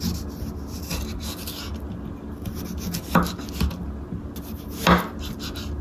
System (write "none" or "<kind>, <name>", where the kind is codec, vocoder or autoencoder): none